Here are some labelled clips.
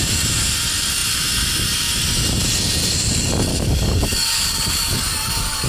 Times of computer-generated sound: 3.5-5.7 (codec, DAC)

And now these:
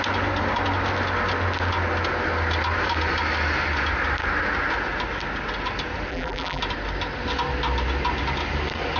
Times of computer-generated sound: 6.1-6.6 (vocoder, BigVGAN v2)

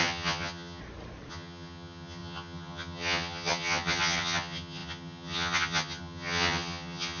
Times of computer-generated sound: 0.0-0.8 (vocoder, HiFi-GAN); 1.3-7.2

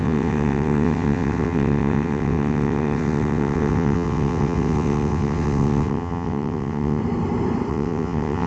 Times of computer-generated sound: 0.0-7.0 (vocoder, WaveNeXt); 7.7-8.5

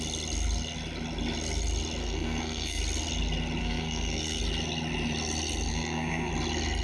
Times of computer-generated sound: 2.0-2.8 (codec, SNAC); 3.6-4.4; 5.7-6.3

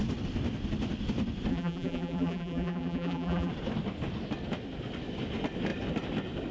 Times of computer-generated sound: 1.5-3.5 (vocoder, BigVGAN v2)

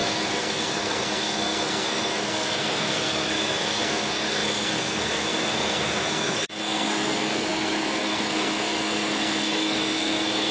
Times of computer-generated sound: 0.0-10.5 (codec, SNAC)